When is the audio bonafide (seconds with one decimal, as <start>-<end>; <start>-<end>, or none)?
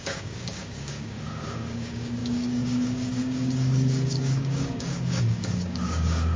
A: none